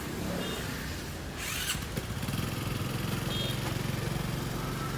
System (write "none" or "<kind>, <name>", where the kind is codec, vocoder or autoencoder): none